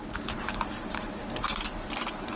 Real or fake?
fake